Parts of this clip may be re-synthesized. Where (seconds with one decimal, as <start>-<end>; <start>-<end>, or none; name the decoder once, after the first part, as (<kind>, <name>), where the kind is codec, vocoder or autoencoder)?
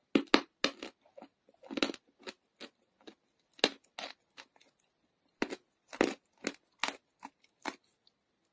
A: none